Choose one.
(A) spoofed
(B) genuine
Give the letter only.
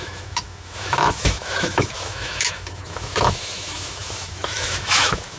A